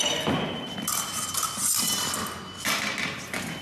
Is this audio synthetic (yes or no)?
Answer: no